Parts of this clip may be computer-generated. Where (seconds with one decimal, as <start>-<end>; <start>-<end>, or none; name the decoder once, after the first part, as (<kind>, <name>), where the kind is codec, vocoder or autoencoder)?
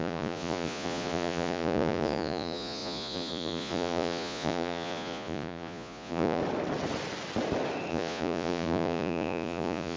0.0-6.4 (vocoder, Vocos); 7.9-10.0